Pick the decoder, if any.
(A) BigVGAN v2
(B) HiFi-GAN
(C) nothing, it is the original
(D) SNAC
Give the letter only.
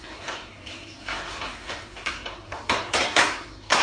D